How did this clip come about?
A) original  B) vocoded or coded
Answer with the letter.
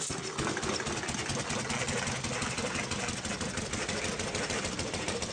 A